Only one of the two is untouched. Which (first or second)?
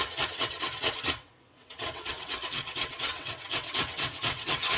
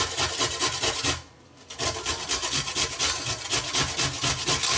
second